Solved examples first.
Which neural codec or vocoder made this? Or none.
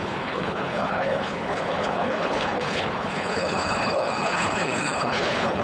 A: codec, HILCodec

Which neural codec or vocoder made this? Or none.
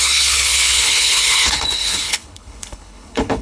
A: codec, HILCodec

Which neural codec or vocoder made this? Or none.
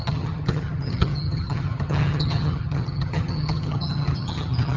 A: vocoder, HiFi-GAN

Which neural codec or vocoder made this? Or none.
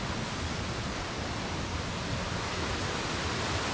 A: none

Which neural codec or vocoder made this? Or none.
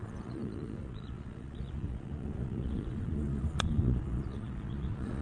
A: vocoder, Vocos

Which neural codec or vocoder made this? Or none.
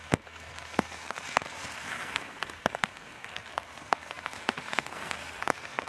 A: codec, SNAC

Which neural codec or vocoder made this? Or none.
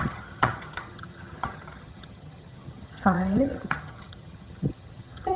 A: vocoder, HiFi-GAN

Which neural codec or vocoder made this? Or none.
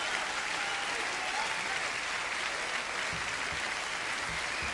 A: none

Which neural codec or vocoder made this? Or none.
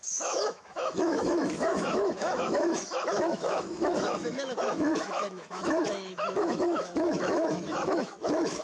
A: autoencoder, DAC-VAE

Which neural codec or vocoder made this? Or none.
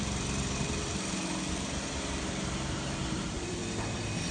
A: vocoder, BigVGAN v2